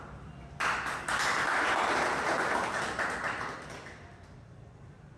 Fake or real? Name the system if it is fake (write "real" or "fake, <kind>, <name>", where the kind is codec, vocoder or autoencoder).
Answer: fake, vocoder, BigVGAN v2